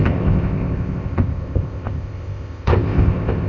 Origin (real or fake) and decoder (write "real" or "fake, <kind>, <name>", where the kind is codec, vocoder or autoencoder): fake, codec, ZipCodec